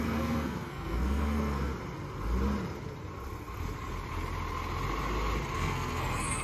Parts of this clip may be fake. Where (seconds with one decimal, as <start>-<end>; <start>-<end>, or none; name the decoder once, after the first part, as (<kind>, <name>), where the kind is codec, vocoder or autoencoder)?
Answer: 0.0-1.7 (codec, SNAC); 5.5-6.4